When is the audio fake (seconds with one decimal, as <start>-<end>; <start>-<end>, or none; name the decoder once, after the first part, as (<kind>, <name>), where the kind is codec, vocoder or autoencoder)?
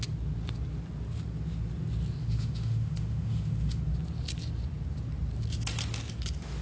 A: 2.2-3.8 (autoencoder, DAC-VAE)